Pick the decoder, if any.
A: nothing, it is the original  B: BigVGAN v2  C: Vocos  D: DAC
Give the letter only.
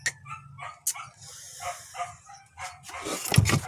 A